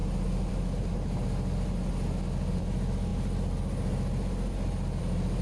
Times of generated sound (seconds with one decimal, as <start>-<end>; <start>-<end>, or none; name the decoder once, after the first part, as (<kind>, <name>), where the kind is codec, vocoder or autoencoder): none